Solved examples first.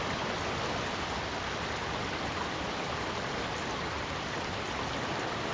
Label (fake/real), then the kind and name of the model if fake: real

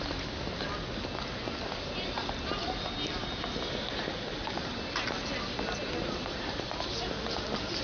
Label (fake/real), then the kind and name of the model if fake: real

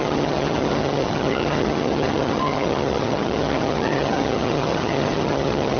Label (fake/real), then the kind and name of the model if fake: fake, vocoder, HiFi-GAN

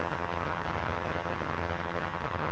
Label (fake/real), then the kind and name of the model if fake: fake, vocoder, HiFi-GAN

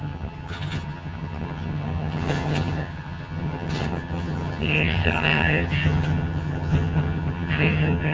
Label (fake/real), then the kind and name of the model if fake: fake, vocoder, HiFi-GAN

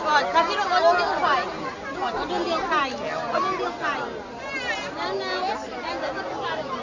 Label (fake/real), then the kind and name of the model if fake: real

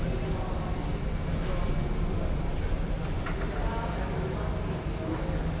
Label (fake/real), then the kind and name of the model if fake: real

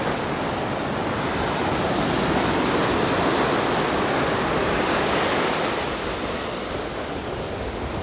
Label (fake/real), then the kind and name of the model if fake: real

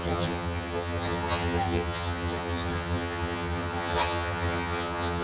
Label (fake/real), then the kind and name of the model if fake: fake, vocoder, HiFi-GAN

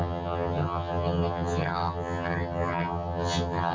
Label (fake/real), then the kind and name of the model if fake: fake, vocoder, HiFi-GAN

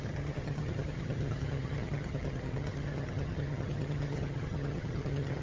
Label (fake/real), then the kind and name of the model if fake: fake, vocoder, HiFi-GAN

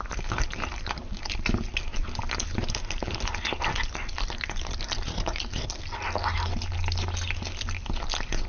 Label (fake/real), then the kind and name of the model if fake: real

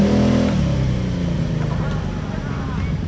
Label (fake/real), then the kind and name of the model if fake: real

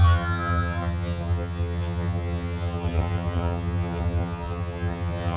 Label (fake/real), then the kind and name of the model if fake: fake, vocoder, HiFi-GAN